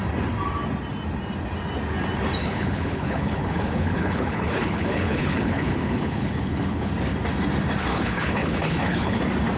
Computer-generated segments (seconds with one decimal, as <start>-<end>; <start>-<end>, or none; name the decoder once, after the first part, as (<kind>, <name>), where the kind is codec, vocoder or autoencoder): 2.4-6.9 (codec, HILCodec); 7.9-9.2